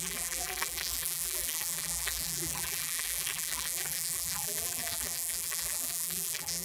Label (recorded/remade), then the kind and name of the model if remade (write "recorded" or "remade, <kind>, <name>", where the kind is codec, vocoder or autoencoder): remade, vocoder, BigVGAN v2